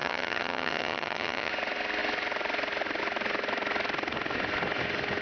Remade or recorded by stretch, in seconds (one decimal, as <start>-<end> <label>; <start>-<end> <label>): 0.0-1.5 remade; 1.5-5.2 recorded